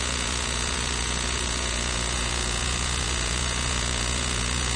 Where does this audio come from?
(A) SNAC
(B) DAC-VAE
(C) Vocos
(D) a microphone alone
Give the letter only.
C